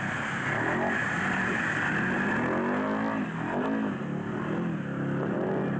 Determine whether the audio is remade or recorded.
recorded